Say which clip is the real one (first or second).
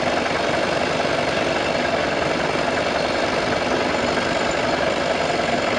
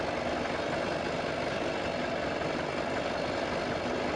second